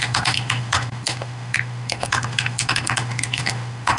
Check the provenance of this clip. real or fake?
fake